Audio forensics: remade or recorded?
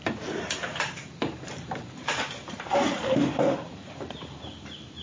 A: remade